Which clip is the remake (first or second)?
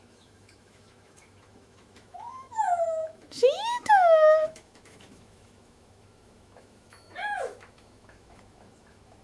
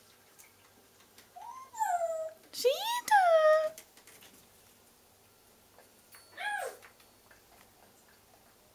first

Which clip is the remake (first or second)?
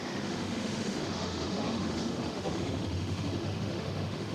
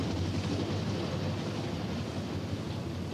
first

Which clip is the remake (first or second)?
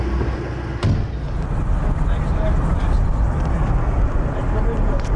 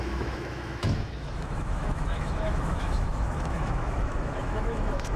second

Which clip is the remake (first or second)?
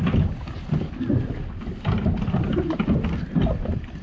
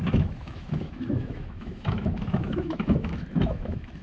second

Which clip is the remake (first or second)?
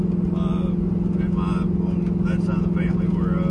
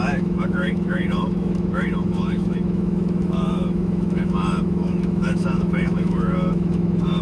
second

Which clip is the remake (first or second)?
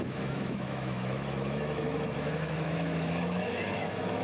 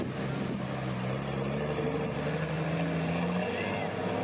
first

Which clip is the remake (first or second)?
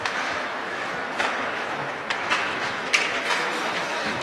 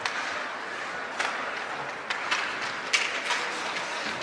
first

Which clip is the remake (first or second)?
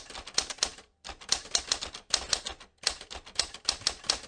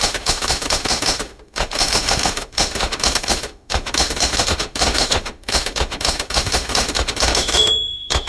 second